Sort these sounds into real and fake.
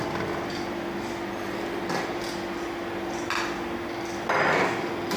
real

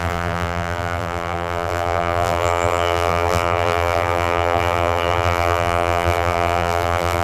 fake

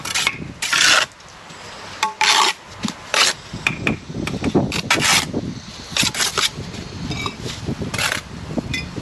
real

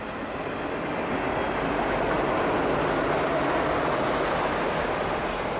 real